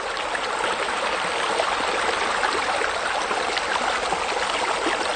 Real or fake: real